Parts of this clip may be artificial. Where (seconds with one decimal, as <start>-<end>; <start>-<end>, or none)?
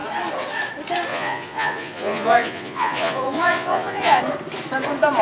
1.1-4.2